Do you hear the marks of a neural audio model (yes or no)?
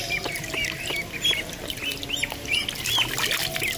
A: no